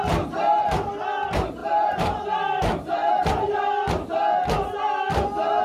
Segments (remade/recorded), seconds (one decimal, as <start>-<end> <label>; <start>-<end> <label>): 0.0-1.6 recorded; 1.6-3.9 remade; 3.9-5.6 recorded